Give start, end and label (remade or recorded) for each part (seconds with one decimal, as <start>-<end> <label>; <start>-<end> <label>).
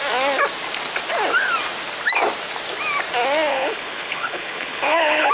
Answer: 0.0-3.5 recorded; 3.5-5.3 remade